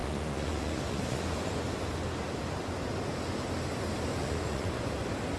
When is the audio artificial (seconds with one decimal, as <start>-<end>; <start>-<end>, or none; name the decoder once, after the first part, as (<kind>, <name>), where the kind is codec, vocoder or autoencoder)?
0.0-1.5 (vocoder, Vocos); 4.1-4.9